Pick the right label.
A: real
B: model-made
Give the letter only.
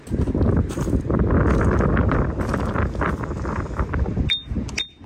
A